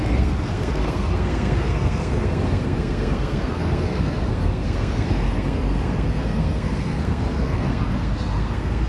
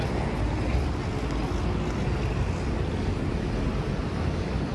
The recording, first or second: second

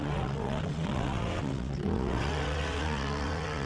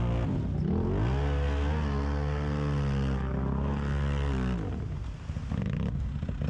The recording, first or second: second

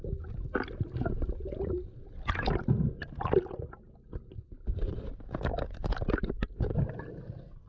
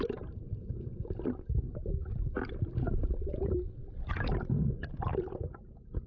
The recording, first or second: first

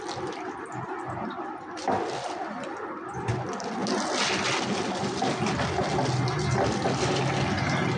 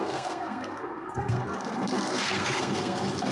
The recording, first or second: first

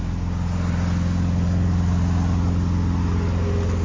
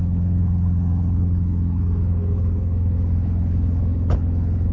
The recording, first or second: first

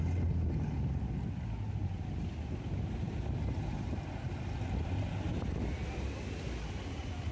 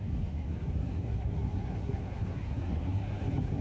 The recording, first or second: first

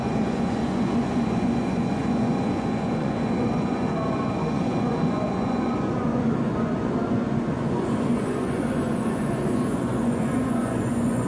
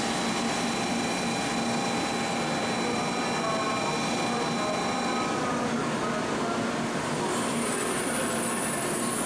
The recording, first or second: second